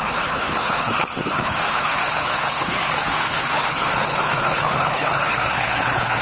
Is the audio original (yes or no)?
no